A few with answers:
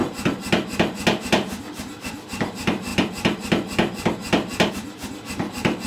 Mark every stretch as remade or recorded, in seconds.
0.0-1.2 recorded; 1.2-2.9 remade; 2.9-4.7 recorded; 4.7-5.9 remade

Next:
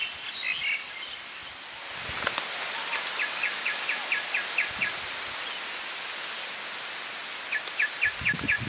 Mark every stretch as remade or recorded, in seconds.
0.0-8.7 recorded

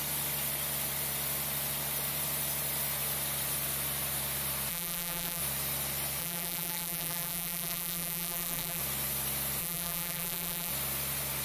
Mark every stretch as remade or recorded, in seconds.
0.0-4.7 recorded; 4.7-5.4 remade; 5.4-6.2 recorded; 6.2-8.8 remade; 8.8-9.6 recorded; 9.6-10.7 remade; 10.7-11.4 recorded